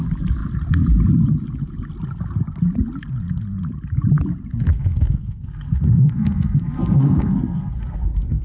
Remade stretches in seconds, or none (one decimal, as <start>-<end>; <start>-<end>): 4.7-8.4